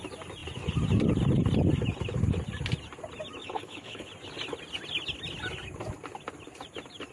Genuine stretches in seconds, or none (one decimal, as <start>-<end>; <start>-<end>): 0.0-3.4; 4.1-7.1